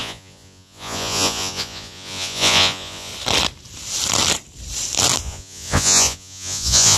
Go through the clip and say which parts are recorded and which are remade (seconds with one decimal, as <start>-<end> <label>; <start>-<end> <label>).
0.0-3.1 remade; 3.1-5.2 recorded; 5.2-7.0 remade